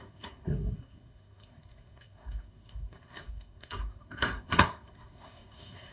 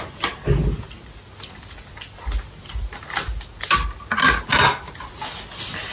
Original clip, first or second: second